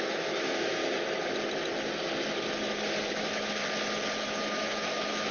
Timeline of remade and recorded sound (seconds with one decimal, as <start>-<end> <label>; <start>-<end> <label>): 0.0-0.8 remade; 0.8-3.1 recorded; 3.1-3.6 remade; 3.6-4.2 recorded; 4.2-5.3 remade